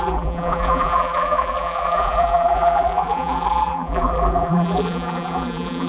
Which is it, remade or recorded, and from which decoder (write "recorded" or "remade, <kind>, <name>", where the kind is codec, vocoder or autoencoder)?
remade, vocoder, BigVGAN v2